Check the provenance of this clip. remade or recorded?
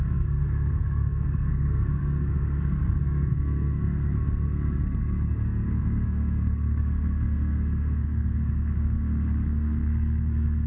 remade